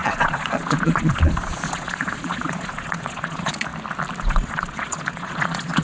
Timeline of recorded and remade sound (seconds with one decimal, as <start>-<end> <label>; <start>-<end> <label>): 0.0-3.7 remade; 3.7-4.2 recorded; 4.2-5.8 remade